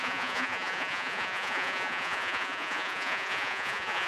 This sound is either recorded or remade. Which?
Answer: remade